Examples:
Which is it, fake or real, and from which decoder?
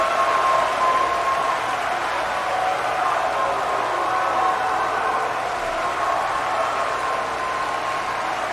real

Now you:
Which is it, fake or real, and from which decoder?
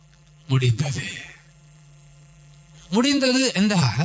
fake, vocoder, BigVGAN v2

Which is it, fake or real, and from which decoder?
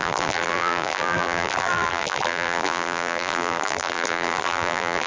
fake, vocoder, BigVGAN v2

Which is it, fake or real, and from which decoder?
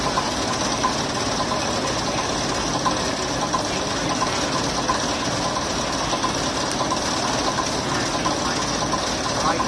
real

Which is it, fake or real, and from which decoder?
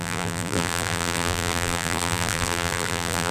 fake, vocoder, BigVGAN v2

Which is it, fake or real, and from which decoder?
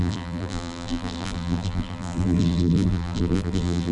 fake, vocoder, BigVGAN v2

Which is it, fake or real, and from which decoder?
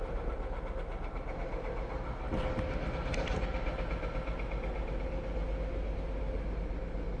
real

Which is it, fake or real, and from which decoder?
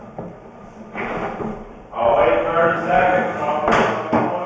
real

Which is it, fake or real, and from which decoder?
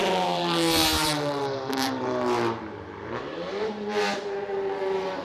fake, vocoder, BigVGAN v2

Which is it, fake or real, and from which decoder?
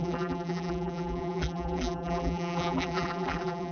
fake, vocoder, BigVGAN v2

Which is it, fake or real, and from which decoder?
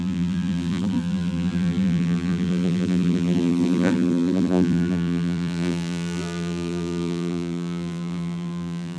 fake, vocoder, BigVGAN v2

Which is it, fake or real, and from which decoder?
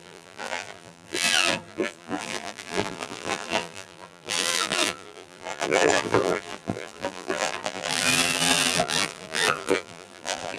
fake, vocoder, BigVGAN v2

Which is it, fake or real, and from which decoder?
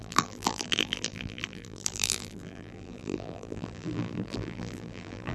fake, vocoder, BigVGAN v2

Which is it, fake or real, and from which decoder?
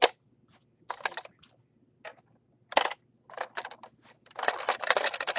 real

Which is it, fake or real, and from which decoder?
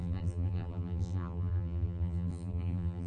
fake, vocoder, BigVGAN v2